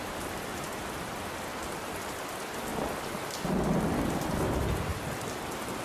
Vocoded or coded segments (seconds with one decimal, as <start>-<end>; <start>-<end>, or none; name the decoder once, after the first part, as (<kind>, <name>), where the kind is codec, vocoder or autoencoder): 1.5-2.2 (vocoder, BigVGAN v2)

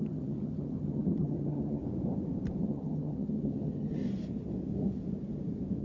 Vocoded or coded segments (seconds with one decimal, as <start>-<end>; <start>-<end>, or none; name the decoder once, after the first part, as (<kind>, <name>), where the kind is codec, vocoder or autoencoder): 0.0-1.8 (vocoder, HiFi-GAN); 2.6-4.0

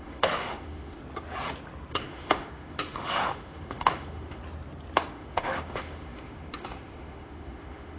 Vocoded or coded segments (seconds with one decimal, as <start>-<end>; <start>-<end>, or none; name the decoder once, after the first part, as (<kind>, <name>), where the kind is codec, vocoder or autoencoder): 0.0-1.0 (autoencoder, DAC-VAE); 1.9-4.4; 5.1-8.0